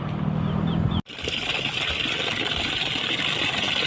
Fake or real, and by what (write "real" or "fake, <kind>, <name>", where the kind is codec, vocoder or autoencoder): real